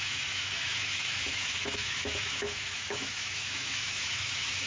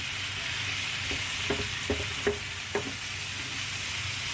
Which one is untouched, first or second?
second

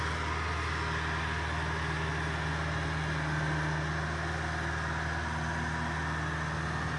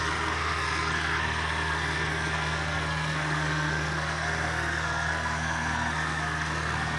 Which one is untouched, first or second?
first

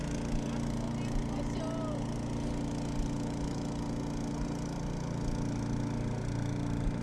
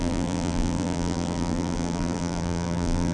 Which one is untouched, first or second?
first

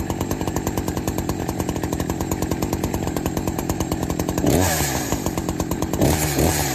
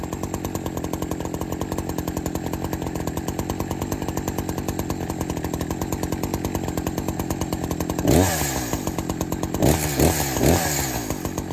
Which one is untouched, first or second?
second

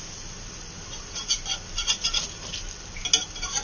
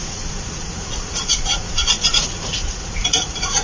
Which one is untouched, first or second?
first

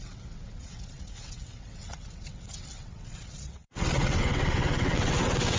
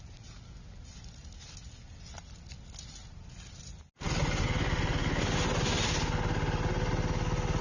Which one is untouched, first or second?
second